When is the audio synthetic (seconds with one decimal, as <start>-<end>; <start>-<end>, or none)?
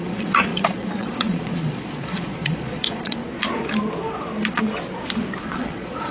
0.0-3.2; 5.5-6.1